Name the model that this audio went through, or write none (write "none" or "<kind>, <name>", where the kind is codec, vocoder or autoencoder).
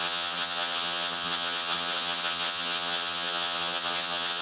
vocoder, HiFi-GAN